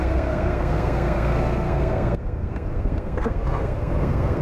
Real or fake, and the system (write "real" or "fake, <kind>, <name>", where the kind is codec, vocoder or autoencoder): fake, codec, SNAC